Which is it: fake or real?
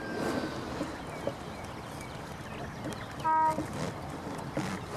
real